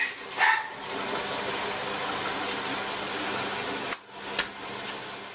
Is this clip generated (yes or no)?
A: no